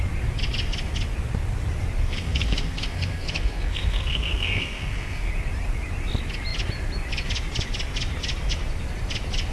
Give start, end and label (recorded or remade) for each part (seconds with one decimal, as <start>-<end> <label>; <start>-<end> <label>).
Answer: 0.0-2.0 recorded; 2.0-5.3 remade; 5.3-9.5 recorded